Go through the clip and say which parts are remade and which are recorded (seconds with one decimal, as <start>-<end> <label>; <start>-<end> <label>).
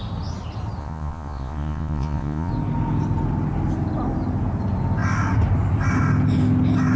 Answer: 0.0-0.8 recorded; 0.8-2.5 remade; 2.5-7.0 recorded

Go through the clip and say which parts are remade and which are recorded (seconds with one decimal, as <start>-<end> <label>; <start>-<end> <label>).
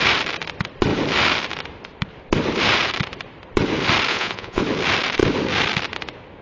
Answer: 0.0-4.1 recorded; 4.1-4.6 remade; 4.6-6.4 recorded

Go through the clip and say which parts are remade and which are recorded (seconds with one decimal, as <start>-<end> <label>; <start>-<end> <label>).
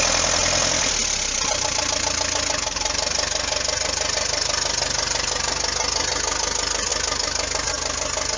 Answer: 0.0-8.4 recorded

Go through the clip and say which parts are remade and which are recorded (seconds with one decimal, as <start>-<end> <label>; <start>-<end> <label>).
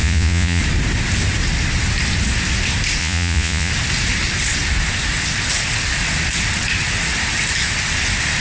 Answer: 0.0-0.6 remade; 0.6-3.0 recorded; 3.0-3.7 remade; 3.7-8.4 recorded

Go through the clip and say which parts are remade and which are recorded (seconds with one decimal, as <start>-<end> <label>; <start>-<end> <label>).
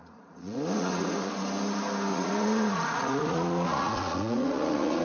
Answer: 0.0-1.3 remade; 1.3-2.1 recorded; 2.1-5.0 remade